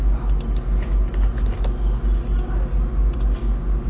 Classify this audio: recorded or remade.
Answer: recorded